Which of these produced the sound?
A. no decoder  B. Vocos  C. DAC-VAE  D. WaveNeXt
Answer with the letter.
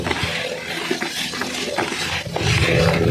A